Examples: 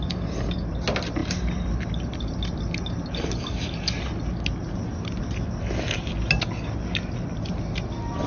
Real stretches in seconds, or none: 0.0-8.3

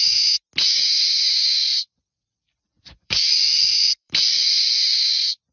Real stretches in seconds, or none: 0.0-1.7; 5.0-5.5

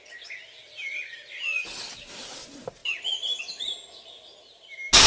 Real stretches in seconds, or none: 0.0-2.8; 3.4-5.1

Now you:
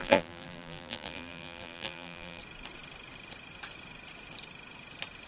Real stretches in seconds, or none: 2.4-5.3

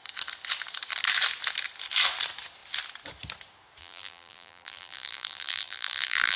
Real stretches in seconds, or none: 0.0-3.8

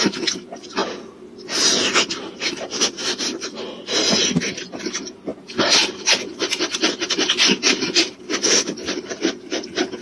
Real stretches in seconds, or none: 0.8-2.1